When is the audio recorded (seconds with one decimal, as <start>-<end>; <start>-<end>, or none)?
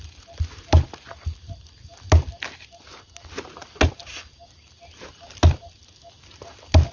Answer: 0.0-6.9